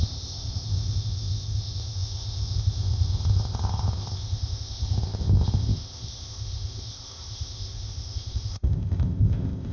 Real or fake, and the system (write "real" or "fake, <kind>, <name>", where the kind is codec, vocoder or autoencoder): fake, codec, ZipCodec